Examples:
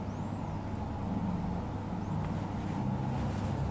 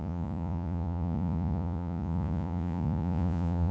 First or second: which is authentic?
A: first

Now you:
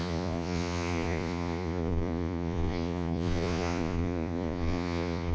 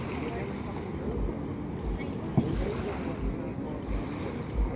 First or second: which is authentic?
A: second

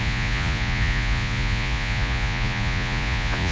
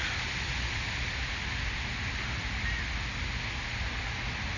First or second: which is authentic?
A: second